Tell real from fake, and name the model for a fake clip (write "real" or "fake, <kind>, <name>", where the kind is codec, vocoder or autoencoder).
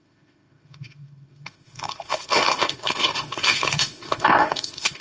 fake, autoencoder, DAC-VAE